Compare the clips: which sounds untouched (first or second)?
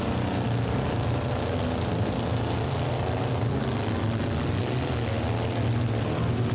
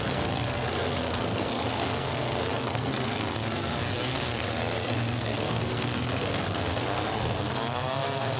first